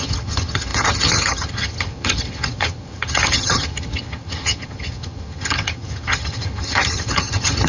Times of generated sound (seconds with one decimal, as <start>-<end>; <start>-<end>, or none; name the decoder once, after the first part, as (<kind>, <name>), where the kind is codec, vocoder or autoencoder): 0.0-7.7 (vocoder, HiFi-GAN)